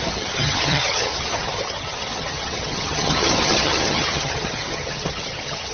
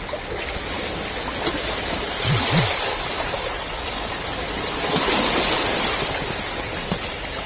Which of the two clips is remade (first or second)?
first